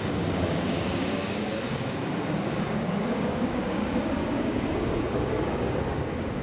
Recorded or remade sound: remade